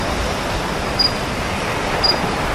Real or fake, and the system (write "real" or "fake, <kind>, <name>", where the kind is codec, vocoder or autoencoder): real